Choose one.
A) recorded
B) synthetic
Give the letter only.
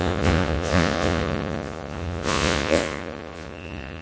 B